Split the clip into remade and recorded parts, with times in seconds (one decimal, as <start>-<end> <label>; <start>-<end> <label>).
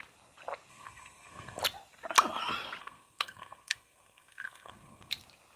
0.0-0.7 recorded; 0.7-1.6 remade; 1.6-2.8 recorded; 2.8-5.1 remade; 5.1-5.6 recorded